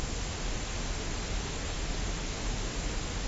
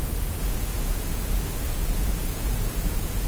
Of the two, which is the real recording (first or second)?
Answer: first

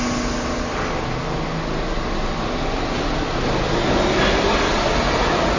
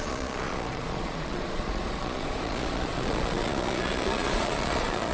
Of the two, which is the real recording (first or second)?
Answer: first